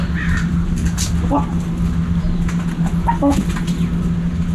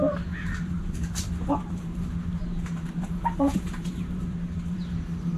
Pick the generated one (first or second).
second